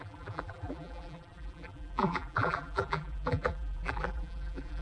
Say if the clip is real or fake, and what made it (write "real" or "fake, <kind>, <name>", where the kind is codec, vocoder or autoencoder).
fake, vocoder, BigVGAN v2